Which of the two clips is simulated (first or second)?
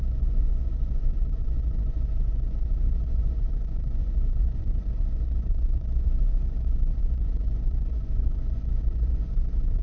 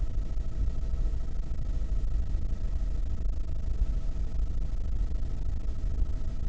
first